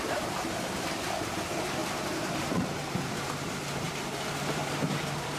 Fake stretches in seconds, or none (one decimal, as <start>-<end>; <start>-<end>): 1.8-5.0

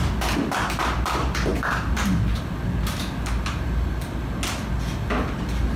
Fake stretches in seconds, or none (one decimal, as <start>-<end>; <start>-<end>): 1.5-2.4

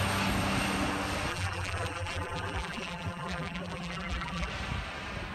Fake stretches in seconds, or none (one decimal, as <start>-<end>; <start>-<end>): 1.3-4.5

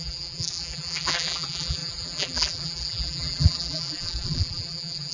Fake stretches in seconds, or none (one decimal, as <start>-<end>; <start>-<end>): 0.0-5.1